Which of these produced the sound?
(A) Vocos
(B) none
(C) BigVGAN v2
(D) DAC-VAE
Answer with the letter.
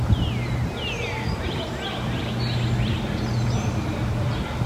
B